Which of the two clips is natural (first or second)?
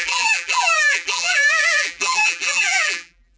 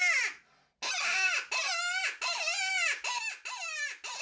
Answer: second